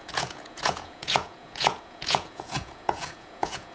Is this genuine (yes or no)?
no